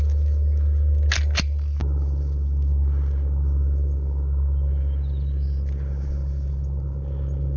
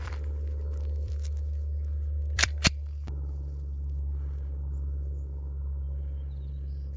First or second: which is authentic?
first